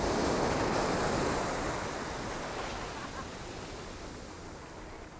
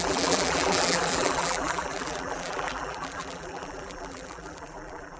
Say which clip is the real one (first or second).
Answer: first